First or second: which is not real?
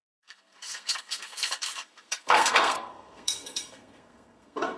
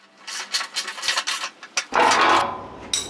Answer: first